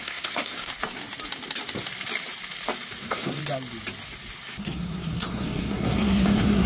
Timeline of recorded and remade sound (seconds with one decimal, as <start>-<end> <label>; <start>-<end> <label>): 0.0-0.7 remade; 0.7-3.0 recorded; 3.0-3.4 remade; 3.4-4.6 recorded; 4.6-6.7 remade